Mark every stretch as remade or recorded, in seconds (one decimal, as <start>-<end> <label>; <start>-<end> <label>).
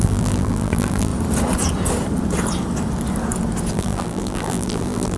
0.0-1.1 remade; 1.1-3.7 recorded; 3.7-5.2 remade